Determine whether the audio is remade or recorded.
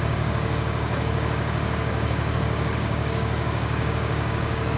remade